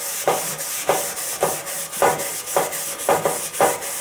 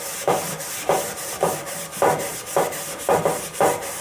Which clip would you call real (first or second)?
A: first